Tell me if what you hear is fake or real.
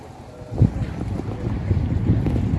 real